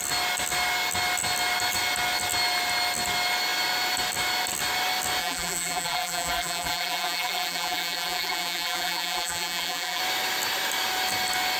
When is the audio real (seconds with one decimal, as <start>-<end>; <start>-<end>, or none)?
0.0-5.2; 10.0-11.6